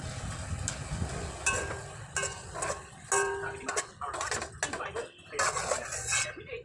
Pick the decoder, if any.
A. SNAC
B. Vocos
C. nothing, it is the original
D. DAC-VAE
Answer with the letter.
C